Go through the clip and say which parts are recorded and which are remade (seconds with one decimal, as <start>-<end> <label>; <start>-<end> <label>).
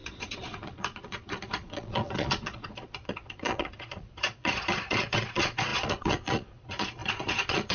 0.0-7.7 remade